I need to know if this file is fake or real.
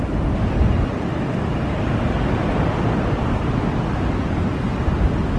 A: real